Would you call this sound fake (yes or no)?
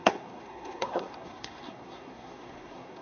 yes